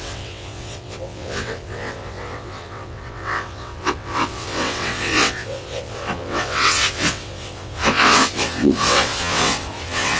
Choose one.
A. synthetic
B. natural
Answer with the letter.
A